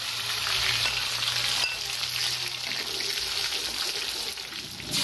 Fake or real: real